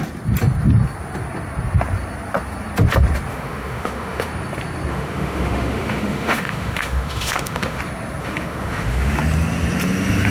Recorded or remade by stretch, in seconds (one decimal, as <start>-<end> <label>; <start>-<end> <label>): 0.0-3.3 recorded; 3.3-4.3 remade; 4.3-4.9 recorded; 4.9-7.8 remade; 7.8-8.2 recorded; 8.2-9.2 remade; 9.2-10.3 recorded